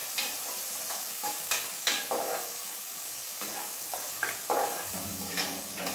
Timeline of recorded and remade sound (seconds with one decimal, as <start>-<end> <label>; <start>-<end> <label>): 0.0-0.9 recorded; 0.9-5.9 remade